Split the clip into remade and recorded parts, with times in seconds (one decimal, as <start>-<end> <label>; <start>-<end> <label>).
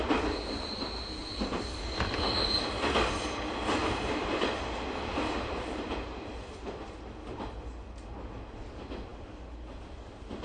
0.0-1.2 recorded; 1.2-2.0 remade; 2.0-3.8 recorded; 3.8-6.8 remade; 6.8-10.4 recorded